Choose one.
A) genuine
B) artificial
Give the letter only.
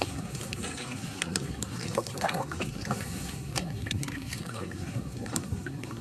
B